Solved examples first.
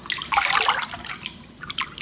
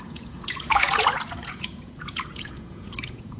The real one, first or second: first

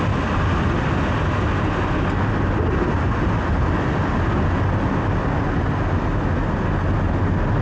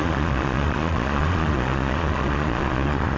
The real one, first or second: first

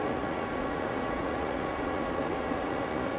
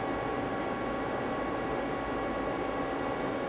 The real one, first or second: second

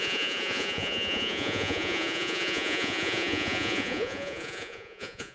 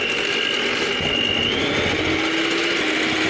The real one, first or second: second